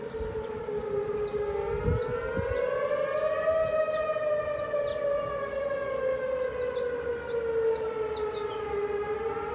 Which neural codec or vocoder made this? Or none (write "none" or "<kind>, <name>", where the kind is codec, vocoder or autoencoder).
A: none